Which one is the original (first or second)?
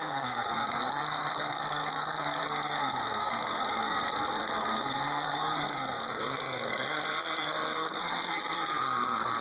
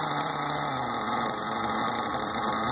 second